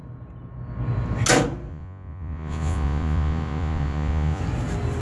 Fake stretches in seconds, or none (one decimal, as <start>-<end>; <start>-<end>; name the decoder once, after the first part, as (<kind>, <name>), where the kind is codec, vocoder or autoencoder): 1.7-4.4 (vocoder, Vocos)